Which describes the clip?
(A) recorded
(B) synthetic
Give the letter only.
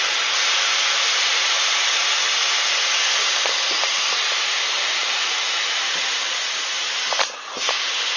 A